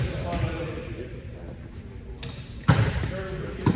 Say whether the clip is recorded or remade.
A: recorded